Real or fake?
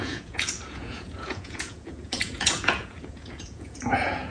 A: fake